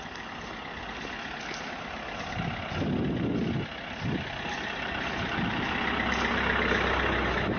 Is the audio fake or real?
real